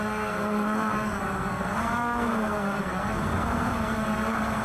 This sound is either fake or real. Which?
fake